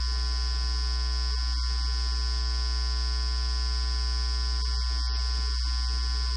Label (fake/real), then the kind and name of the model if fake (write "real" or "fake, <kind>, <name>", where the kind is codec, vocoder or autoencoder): real